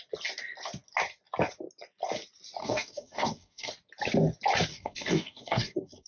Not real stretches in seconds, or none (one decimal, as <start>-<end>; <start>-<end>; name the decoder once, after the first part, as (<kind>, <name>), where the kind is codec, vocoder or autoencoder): 2.6-3.7 (codec, DAC); 4.7-6.1